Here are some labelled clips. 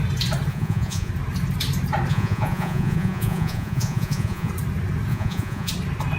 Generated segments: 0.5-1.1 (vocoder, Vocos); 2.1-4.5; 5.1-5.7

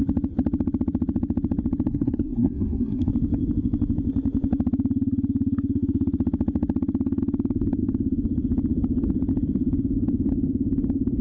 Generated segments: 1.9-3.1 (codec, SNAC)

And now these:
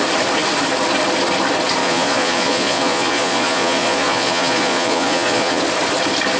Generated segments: 1.8-5.6 (vocoder, Vocos)